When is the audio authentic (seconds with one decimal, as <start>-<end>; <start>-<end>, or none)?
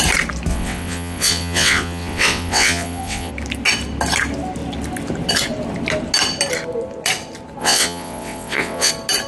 0.0-0.5; 3.3-7.6; 8.9-9.3